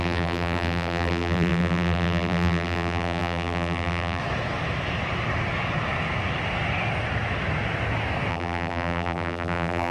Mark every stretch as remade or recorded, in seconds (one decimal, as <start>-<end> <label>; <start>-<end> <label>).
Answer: 0.0-4.2 remade; 4.2-8.3 recorded; 8.3-9.9 remade